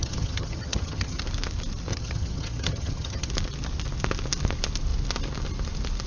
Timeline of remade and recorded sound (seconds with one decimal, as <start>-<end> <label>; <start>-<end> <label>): 0.0-1.2 remade; 1.2-1.9 recorded; 1.9-3.3 remade; 3.3-6.1 recorded